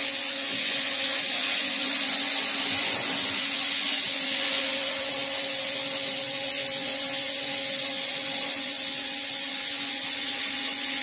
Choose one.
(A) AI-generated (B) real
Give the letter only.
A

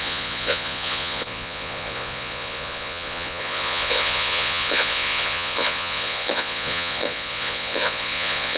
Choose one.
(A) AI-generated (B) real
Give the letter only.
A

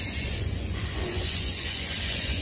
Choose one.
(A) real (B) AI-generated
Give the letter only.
B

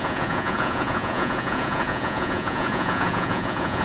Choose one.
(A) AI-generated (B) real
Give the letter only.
A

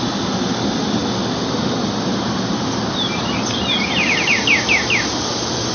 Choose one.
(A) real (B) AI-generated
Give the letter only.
A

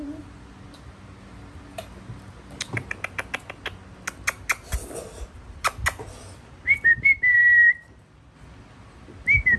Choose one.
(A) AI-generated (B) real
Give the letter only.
B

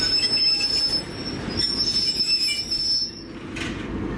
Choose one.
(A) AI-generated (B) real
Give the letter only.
B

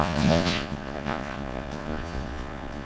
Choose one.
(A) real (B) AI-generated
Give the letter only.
B